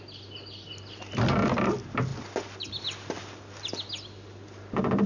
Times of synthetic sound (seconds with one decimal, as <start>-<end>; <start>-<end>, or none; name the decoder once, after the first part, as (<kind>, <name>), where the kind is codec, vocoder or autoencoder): none